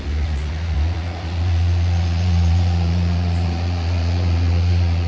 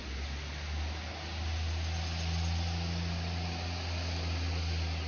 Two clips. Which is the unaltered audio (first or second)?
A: second